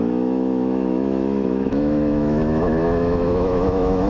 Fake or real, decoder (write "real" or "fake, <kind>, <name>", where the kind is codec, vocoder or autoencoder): fake, autoencoder, DAC-VAE